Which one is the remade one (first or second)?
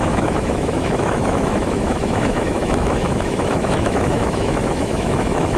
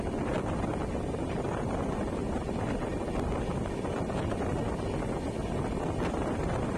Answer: first